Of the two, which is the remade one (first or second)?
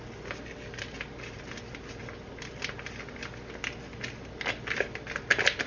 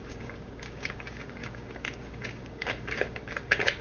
second